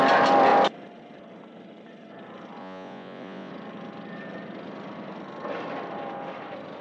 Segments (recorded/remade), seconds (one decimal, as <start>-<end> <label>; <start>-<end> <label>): 0.0-2.6 recorded; 2.6-3.5 remade; 3.5-6.8 recorded

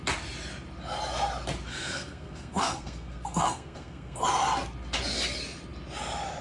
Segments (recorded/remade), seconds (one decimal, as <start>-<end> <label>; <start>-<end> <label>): 0.0-1.7 recorded; 1.7-4.2 remade; 4.2-6.4 recorded

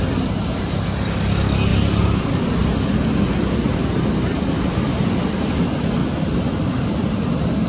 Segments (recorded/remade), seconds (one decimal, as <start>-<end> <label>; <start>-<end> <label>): 0.0-1.7 recorded; 1.7-2.2 remade; 2.2-4.3 recorded; 4.3-4.9 remade; 4.9-6.0 recorded; 6.0-7.1 remade; 7.1-7.7 recorded

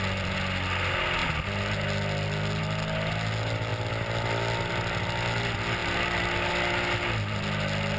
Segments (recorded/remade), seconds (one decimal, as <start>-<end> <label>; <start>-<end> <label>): 0.0-8.0 recorded